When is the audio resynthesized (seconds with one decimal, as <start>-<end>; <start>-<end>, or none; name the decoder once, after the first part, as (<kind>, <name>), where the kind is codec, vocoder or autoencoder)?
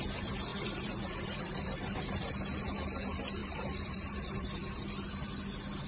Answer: 0.5-2.0 (vocoder, BigVGAN v2); 3.4-4.9